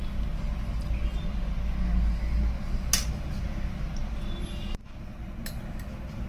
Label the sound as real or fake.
real